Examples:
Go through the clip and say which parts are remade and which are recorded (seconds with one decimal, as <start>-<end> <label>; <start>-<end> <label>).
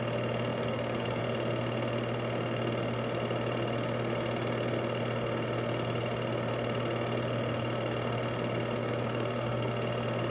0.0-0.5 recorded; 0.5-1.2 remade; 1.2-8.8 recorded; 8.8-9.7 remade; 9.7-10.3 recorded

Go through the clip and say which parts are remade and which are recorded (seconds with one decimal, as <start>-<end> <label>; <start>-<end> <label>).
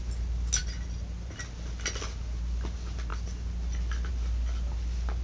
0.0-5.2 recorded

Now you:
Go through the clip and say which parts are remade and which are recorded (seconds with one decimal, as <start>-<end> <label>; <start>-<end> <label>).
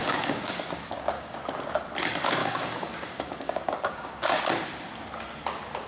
0.0-1.4 remade; 1.4-2.4 recorded; 2.4-4.4 remade; 4.4-5.9 recorded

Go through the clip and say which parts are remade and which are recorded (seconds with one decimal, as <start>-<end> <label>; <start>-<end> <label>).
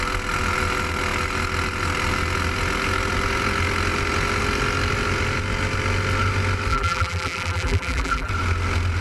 0.0-6.7 recorded; 6.7-8.3 remade; 8.3-9.0 recorded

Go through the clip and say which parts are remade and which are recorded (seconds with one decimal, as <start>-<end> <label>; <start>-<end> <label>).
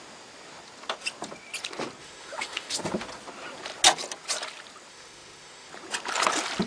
0.0-2.0 recorded; 2.0-2.8 remade; 2.8-4.9 recorded; 4.9-5.7 remade; 5.7-6.7 recorded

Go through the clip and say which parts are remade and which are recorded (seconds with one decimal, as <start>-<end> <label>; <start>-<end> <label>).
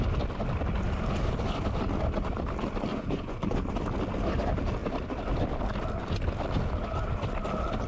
0.0-2.9 recorded; 2.9-3.6 remade; 3.6-7.9 recorded